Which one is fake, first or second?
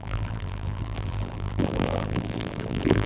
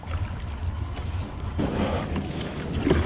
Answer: first